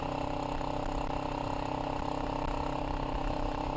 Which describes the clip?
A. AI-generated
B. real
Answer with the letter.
B